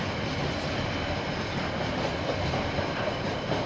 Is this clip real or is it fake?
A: real